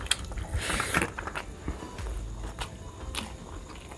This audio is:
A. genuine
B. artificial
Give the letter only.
A